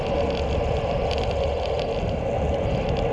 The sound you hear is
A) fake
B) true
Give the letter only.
B